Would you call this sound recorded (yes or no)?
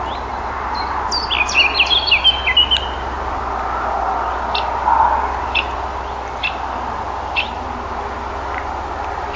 yes